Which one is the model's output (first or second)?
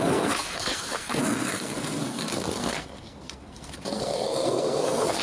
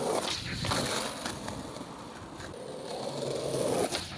first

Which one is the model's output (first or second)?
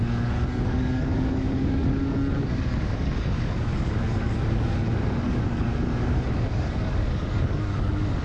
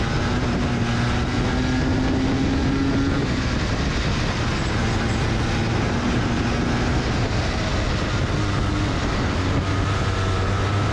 first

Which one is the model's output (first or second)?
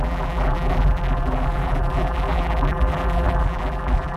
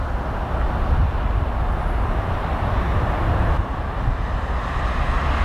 first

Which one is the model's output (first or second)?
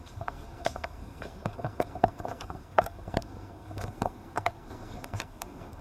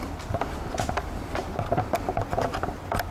first